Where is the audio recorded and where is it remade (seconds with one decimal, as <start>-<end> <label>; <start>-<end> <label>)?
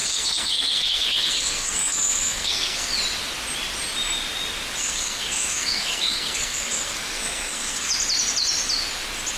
0.0-2.9 remade; 2.9-4.8 recorded; 4.8-7.9 remade; 7.9-9.4 recorded